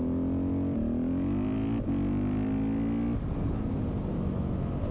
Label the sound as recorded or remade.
recorded